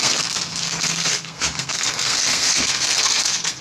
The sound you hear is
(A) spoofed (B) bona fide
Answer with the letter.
A